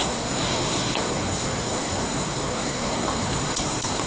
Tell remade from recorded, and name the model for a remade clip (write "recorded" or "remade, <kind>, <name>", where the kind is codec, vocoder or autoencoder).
remade, codec, SNAC